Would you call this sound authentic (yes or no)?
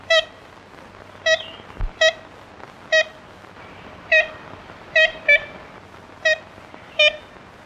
yes